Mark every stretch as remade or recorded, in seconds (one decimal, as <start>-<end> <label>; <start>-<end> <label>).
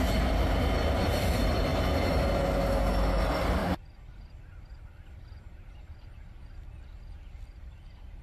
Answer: 0.0-1.7 remade; 1.7-3.2 recorded; 3.2-3.6 remade; 3.6-4.1 recorded; 4.1-8.2 remade